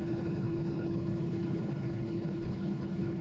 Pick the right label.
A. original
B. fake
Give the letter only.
B